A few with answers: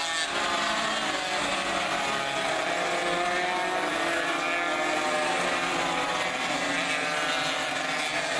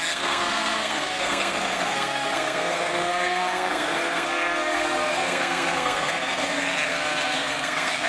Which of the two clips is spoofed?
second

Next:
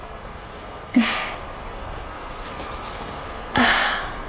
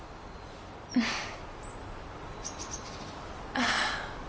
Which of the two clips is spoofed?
first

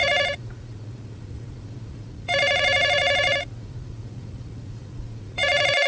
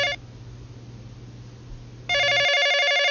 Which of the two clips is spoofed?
first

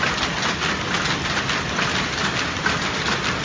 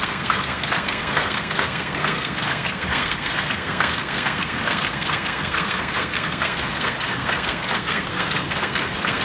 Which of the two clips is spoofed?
second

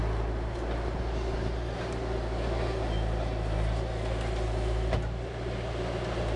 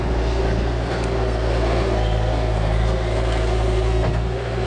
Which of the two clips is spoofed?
second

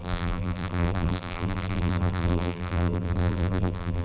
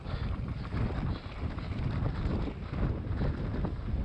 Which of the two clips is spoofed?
first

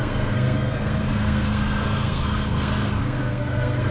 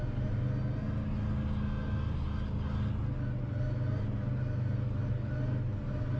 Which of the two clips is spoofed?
first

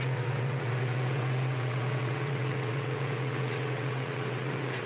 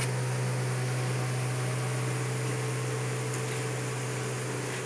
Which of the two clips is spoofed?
first